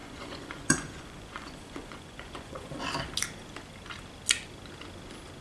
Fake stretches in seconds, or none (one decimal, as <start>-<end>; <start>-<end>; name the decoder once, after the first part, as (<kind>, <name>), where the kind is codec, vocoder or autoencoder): 0.0-2.8 (vocoder, Vocos)